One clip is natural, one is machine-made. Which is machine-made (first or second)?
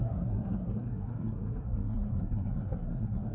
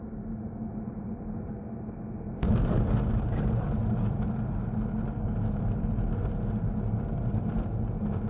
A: first